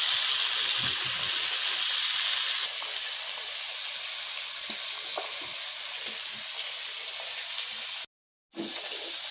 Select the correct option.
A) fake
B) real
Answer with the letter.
B